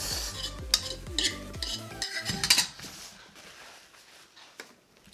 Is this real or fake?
real